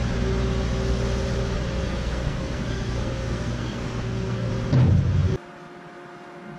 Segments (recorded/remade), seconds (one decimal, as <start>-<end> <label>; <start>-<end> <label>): 0.0-1.8 recorded; 1.8-4.5 remade; 4.5-6.6 recorded